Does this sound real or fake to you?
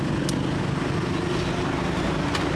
real